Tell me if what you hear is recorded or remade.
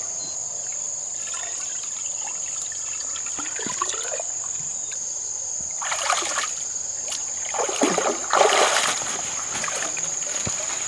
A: recorded